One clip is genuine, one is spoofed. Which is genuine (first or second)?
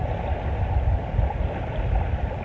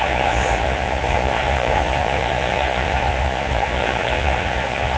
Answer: first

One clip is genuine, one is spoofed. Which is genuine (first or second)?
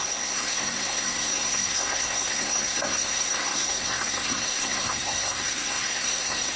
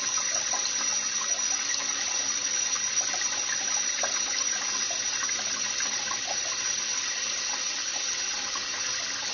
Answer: second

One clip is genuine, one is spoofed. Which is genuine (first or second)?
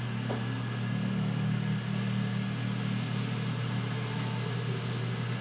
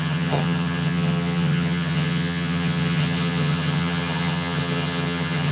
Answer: first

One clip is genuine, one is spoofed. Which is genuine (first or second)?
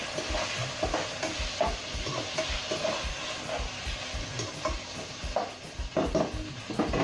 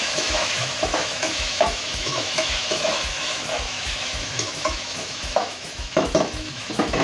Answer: first